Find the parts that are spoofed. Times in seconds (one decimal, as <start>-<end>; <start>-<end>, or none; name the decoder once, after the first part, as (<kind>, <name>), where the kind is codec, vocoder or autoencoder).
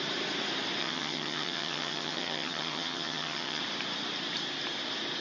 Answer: 0.8-3.6 (vocoder, HiFi-GAN)